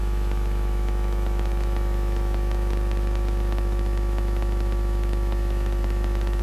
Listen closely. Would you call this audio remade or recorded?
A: remade